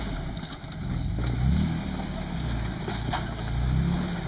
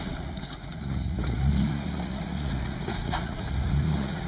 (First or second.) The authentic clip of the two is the first